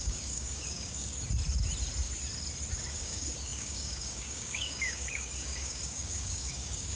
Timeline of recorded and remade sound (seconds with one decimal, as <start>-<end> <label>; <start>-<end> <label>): 0.0-1.1 remade; 1.1-2.9 recorded; 2.9-7.0 remade